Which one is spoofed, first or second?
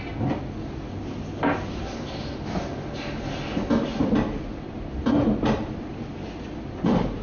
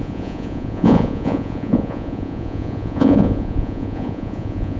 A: second